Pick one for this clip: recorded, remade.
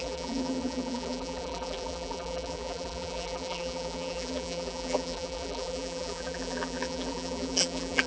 remade